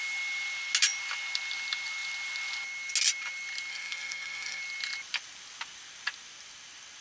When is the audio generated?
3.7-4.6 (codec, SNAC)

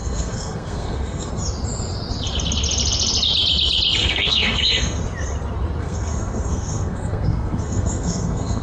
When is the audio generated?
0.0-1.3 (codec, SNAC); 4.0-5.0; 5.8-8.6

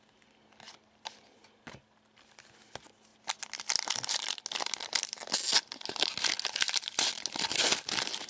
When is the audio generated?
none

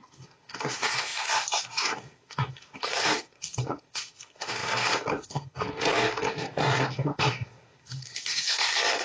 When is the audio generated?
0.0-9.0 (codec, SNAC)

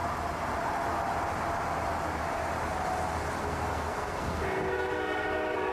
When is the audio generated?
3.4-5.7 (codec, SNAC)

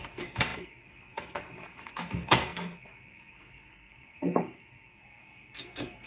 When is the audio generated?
0.0-6.1 (codec, SNAC)

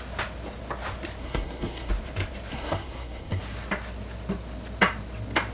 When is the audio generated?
1.2-1.9 (codec, SNAC); 2.5-3.4